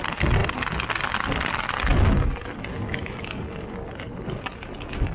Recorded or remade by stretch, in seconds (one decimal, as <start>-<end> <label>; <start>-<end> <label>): 0.0-5.1 recorded